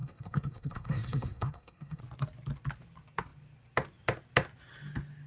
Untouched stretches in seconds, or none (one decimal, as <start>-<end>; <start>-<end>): 2.0-5.3